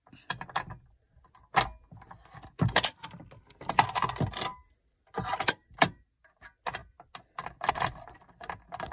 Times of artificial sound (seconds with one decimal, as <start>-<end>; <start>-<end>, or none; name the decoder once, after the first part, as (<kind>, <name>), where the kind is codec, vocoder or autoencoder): 2.2-3.0 (vocoder, BigVGAN v2)